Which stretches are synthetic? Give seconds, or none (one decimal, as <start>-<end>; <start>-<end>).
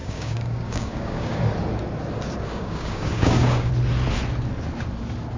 0.0-1.4; 2.5-3.7